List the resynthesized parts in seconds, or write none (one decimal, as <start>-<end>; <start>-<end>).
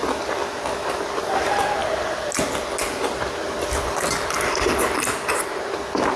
none